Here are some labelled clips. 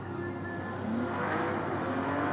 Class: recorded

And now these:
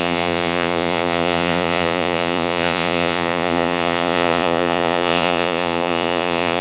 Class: remade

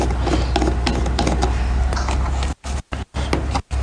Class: recorded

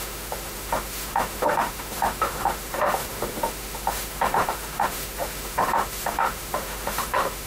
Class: remade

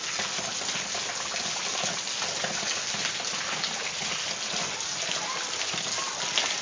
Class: recorded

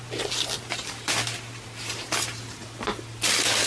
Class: recorded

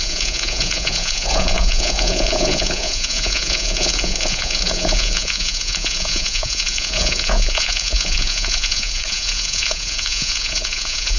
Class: remade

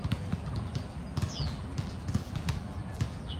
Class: remade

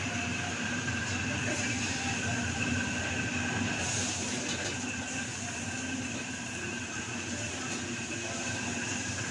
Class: remade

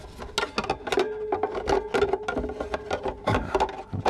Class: recorded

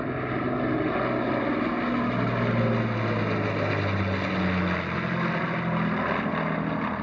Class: recorded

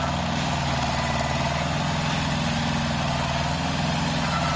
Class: recorded